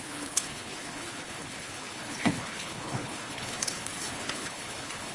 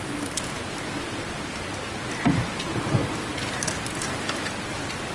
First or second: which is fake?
first